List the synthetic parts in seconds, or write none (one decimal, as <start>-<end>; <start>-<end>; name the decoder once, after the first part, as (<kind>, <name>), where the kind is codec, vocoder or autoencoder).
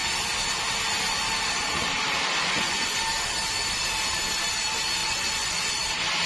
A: 2.4-3.0 (vocoder, Vocos); 5.0-5.7